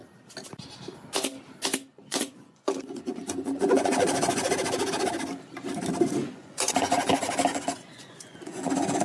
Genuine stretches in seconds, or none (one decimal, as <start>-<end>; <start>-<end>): 0.0-1.9; 4.5-6.2; 7.1-7.5